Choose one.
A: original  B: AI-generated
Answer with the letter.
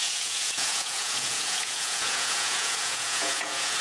B